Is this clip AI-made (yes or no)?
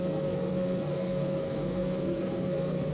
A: yes